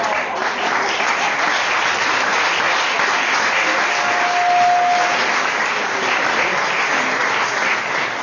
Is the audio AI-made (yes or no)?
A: no